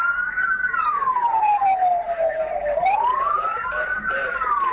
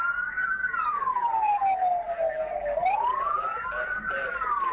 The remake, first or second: first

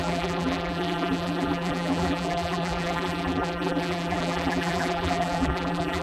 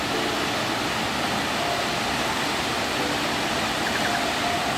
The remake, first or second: first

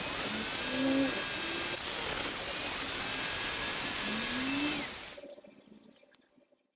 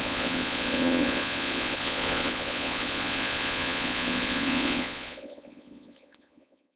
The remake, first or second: second